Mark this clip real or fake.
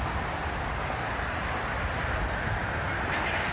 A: real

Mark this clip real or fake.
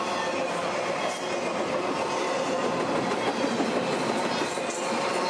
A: real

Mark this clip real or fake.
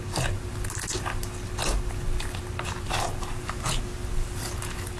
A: real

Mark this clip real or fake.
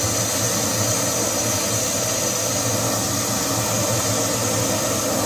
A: real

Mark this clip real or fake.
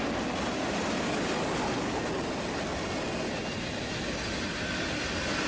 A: real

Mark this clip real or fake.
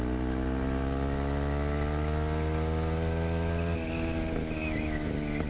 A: real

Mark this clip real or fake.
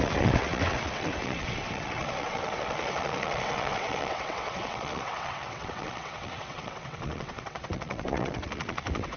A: fake